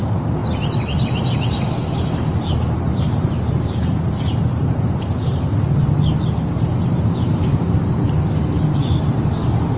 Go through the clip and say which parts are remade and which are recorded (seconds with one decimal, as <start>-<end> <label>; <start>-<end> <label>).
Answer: 0.0-5.8 remade; 5.8-9.8 recorded